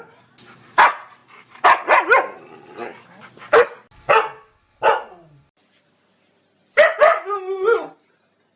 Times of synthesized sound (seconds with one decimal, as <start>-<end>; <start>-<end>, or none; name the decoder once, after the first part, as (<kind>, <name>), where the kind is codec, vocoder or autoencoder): none